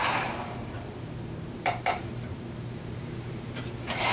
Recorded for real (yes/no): no